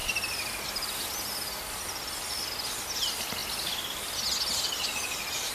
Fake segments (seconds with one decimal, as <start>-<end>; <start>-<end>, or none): none